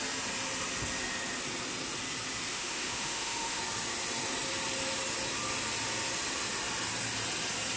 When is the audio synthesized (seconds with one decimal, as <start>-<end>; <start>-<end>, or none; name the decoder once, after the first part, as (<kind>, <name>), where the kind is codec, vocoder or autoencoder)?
2.5-3.6 (autoencoder, DAC-VAE)